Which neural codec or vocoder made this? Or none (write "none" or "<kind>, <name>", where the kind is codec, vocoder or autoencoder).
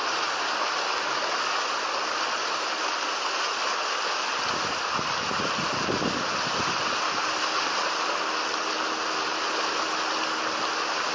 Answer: none